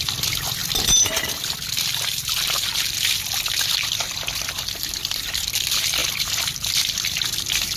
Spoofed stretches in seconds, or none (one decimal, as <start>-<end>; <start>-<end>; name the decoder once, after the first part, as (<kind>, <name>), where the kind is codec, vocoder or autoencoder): 0.0-2.7 (vocoder, BigVGAN v2); 4.7-6.0